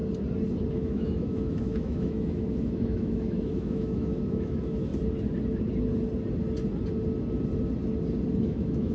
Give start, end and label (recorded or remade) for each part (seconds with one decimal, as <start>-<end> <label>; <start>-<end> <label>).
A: 0.0-0.7 recorded; 0.7-4.9 remade; 4.9-8.4 recorded; 8.4-8.9 remade